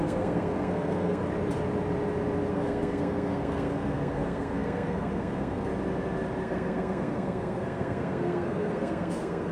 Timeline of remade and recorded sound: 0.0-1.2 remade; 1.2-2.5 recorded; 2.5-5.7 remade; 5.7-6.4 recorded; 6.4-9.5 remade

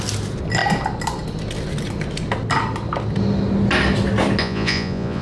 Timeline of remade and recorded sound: 0.0-4.4 recorded; 4.4-5.2 remade

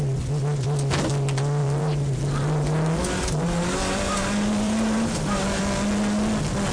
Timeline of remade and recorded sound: 0.0-1.6 recorded; 1.6-5.6 remade; 5.6-6.7 recorded

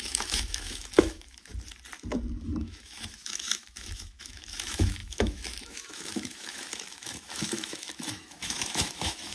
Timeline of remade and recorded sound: 0.0-1.5 remade; 1.5-2.6 recorded; 2.6-9.3 remade